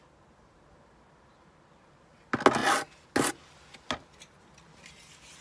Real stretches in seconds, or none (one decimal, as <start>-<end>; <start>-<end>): 0.0-5.4